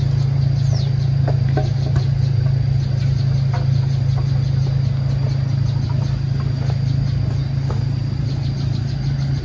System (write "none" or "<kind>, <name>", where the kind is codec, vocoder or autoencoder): none